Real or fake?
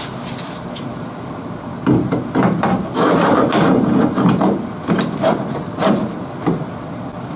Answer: real